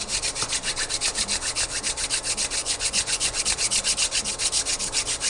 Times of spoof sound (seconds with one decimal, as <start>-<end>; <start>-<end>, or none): 2.6-3.4